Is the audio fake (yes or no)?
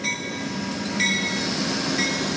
no